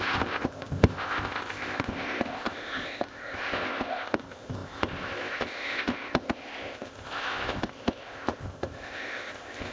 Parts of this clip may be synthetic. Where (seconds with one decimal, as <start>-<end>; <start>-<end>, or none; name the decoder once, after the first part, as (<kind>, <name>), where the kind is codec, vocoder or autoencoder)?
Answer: 0.0-9.7 (codec, ZipCodec)